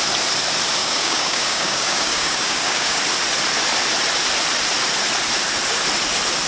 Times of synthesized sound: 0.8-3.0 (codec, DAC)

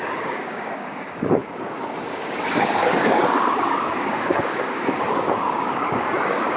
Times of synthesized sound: 0.0-6.6 (codec, DAC)

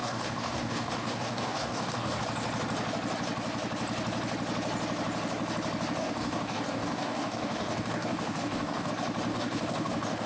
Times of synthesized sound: 0.0-2.2 (codec, DAC); 6.0-8.9; 9.3-10.3

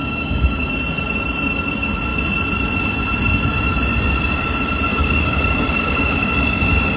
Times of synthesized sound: 0.0-0.7 (codec, DAC); 4.9-6.6